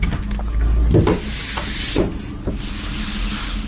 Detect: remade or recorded recorded